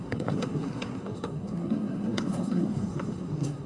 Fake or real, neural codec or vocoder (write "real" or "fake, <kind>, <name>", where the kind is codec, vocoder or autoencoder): fake, codec, SNAC